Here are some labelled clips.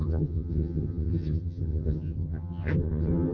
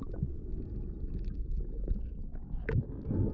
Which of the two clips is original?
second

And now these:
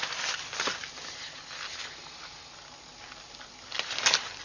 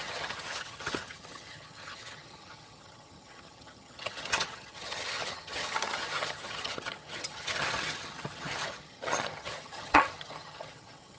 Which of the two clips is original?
first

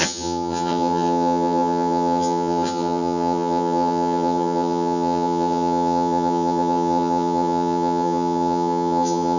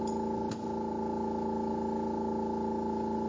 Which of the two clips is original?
second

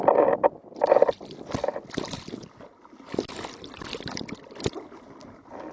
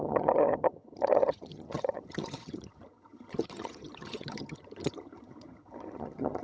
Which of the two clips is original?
first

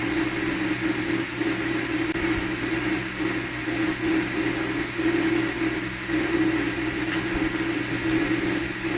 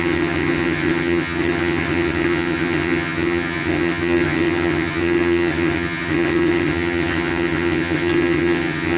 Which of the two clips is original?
first